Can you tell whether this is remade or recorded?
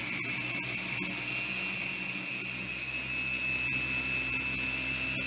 recorded